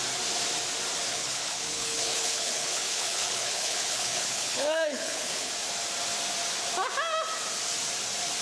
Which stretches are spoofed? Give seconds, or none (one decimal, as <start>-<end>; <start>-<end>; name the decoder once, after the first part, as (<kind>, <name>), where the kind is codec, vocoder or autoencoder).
1.1-5.5 (codec, HILCodec)